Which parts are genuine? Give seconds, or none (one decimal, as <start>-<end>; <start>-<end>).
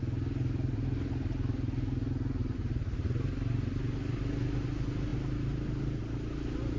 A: 0.0-2.4; 3.1-6.8